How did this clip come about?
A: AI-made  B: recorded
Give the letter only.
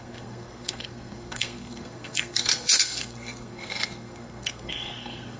A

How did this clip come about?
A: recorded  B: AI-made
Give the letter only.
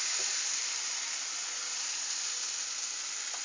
A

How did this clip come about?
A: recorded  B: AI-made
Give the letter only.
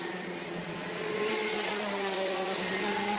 B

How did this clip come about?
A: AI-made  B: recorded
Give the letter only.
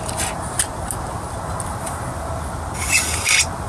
B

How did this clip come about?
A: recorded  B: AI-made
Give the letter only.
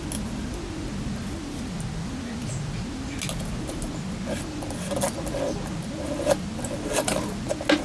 A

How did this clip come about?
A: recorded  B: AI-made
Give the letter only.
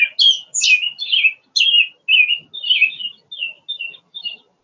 A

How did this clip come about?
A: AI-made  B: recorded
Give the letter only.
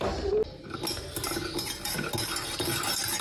B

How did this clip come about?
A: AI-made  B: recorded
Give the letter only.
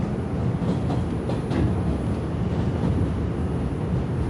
B